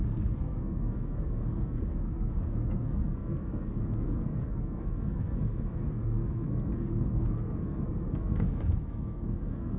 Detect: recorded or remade remade